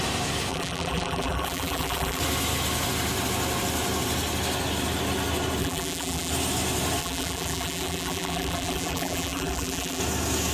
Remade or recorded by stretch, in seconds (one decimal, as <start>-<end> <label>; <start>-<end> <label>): 0.0-0.5 recorded; 0.5-2.2 remade; 2.2-5.6 recorded; 5.6-6.3 remade; 6.3-7.0 recorded; 7.0-10.0 remade; 10.0-10.5 recorded

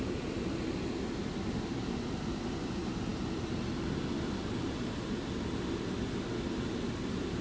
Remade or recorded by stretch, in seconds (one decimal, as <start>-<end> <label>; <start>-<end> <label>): 0.0-7.4 recorded